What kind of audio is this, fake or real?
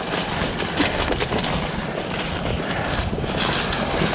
real